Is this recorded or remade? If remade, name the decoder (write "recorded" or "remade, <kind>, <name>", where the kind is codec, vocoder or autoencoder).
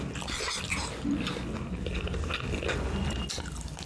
recorded